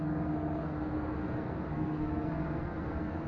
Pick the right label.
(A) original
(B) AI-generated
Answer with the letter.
B